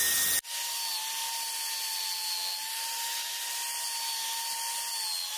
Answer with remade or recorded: recorded